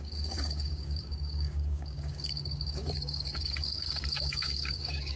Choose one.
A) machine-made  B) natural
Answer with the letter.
A